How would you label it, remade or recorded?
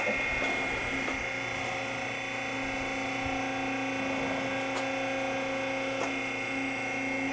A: recorded